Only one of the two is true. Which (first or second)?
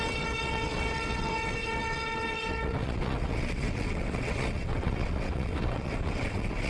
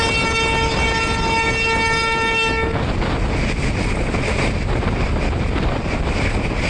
second